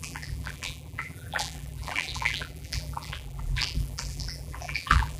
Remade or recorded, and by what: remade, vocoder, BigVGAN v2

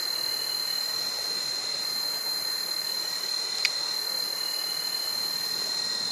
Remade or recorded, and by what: recorded